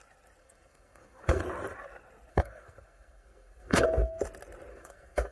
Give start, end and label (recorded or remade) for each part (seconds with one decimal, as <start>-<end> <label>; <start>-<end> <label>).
0.0-0.4 recorded; 0.4-1.4 remade; 1.4-2.3 recorded; 2.3-4.2 remade; 4.2-4.7 recorded; 4.7-5.3 remade